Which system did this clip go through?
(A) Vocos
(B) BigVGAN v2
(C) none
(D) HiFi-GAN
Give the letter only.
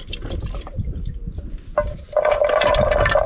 C